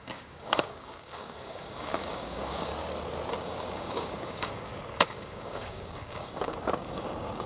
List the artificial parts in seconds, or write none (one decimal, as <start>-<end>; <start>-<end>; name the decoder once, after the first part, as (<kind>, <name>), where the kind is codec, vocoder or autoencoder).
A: 0.0-2.7 (codec, DAC); 3.3-7.5